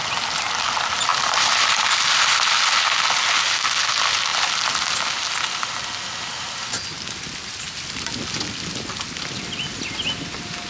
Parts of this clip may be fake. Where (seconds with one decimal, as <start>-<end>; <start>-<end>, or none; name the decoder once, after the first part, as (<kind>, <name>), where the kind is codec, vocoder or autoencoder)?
none